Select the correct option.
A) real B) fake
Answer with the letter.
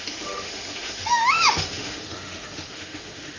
B